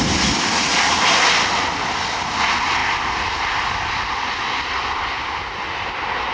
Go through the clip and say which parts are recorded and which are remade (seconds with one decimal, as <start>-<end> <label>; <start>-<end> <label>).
0.0-6.3 recorded